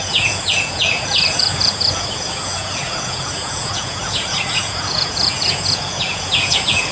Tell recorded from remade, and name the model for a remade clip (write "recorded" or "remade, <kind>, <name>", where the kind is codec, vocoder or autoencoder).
remade, vocoder, Vocos